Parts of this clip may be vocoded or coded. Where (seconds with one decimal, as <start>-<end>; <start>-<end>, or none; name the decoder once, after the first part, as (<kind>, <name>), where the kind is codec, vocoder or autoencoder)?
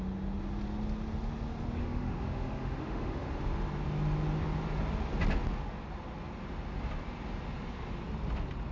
1.8-3.3 (autoencoder, DAC-VAE)